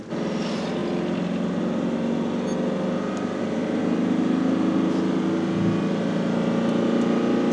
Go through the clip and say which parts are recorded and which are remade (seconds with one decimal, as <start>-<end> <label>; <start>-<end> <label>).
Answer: 0.0-7.5 recorded